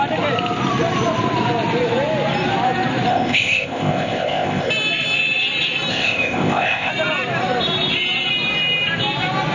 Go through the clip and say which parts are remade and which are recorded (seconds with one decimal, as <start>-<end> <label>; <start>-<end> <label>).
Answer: 0.0-3.1 recorded; 3.1-4.7 remade; 4.7-5.9 recorded; 5.9-6.9 remade; 6.9-9.5 recorded